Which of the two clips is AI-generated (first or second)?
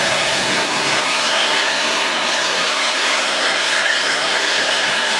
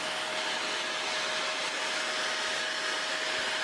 first